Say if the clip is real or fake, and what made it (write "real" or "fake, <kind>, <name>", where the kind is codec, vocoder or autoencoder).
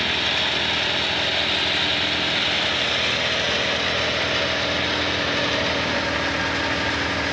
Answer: real